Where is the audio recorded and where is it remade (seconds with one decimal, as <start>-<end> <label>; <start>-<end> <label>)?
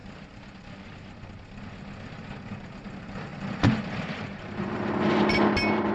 0.0-1.3 remade; 1.3-5.9 recorded